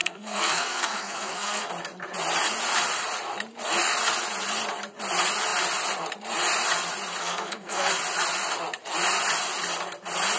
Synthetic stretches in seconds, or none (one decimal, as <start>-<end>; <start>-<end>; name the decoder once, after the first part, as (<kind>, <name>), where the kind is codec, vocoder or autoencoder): 0.0-1.7 (codec, SNAC); 7.2-7.9